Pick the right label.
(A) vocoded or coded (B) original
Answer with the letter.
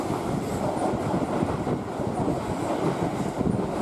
B